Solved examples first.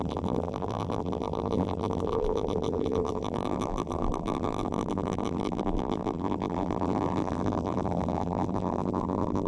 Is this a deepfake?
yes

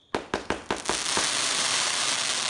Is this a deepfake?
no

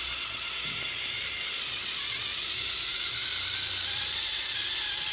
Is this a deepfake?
no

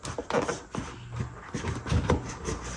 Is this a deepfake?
no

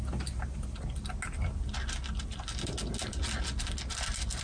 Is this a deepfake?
no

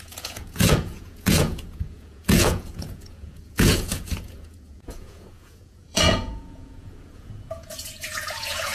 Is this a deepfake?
yes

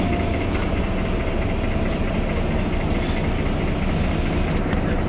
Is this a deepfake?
no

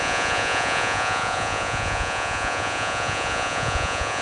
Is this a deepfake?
yes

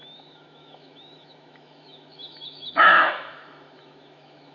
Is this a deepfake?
yes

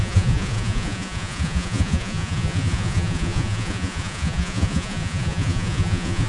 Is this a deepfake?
yes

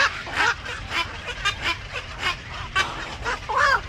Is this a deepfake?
yes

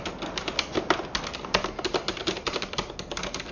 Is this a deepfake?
no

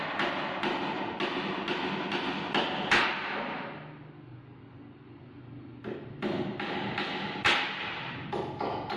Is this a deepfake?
no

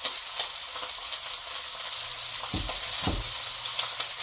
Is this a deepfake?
no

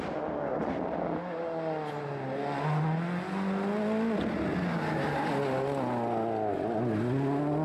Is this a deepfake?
no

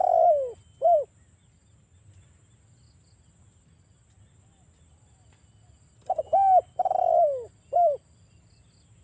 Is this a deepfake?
no